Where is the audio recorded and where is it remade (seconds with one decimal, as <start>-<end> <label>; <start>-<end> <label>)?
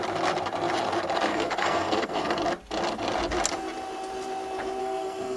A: 0.0-1.3 recorded; 1.3-2.4 remade; 2.4-4.8 recorded; 4.8-5.4 remade